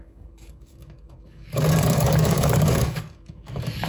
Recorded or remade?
remade